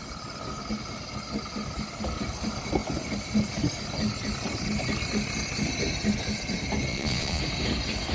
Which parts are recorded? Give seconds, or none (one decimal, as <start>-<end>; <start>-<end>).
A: 0.0-6.9; 7.4-8.1